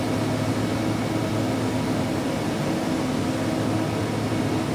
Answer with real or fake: real